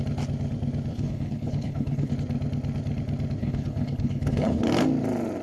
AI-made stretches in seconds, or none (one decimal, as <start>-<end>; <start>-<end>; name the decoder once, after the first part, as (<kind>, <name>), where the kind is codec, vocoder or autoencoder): 0.9-2.1 (codec, HILCodec); 3.4-4.6